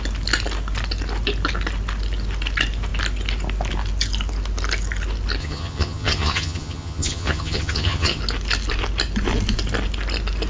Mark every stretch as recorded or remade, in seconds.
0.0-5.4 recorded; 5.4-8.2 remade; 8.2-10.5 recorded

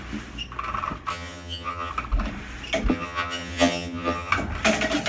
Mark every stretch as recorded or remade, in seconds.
0.0-1.1 recorded; 1.1-1.9 remade; 1.9-2.9 recorded; 2.9-4.3 remade; 4.3-5.1 recorded

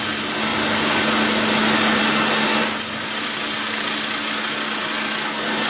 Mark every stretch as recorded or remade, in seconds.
0.0-5.7 recorded

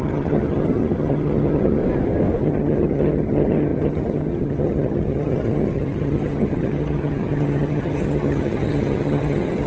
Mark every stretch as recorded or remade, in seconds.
0.0-1.8 remade; 1.8-2.4 recorded; 2.4-9.7 remade